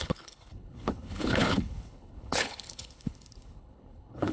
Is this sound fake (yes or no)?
yes